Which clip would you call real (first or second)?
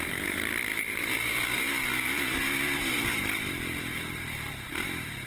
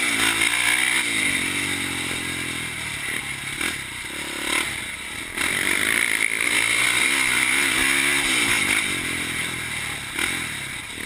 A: second